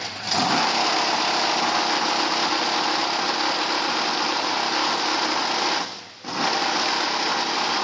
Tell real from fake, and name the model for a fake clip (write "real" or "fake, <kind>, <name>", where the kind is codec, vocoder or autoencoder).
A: real